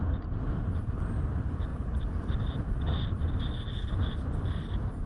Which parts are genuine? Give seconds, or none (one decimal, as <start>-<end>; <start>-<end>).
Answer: 0.0-1.7; 3.2-5.1